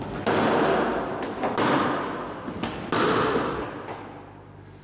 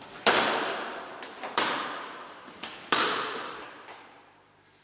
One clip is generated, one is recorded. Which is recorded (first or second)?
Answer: first